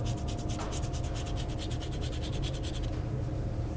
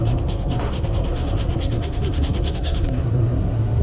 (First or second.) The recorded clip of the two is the first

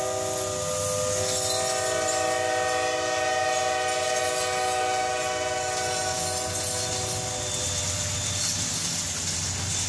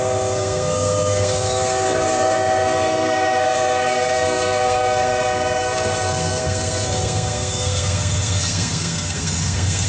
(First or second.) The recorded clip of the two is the first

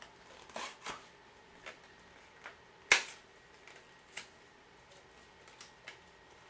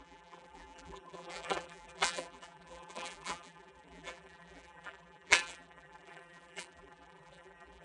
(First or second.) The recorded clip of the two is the first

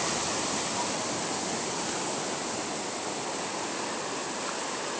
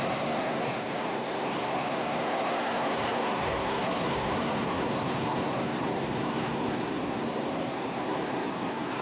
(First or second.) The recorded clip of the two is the first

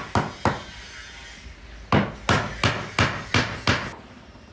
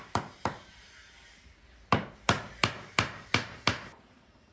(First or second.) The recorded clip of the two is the first